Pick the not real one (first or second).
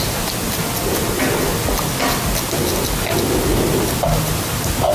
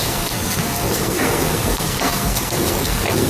second